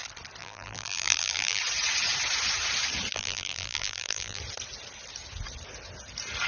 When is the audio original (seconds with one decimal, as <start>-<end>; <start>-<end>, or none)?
0.0-0.4; 1.6-3.1; 4.4-6.5